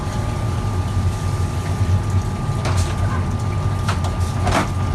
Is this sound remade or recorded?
recorded